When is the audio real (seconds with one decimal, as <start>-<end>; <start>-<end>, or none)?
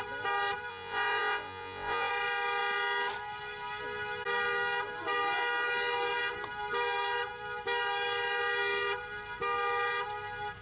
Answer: 0.0-0.7; 2.1-10.6